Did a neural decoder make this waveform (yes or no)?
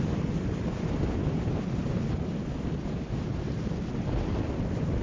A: no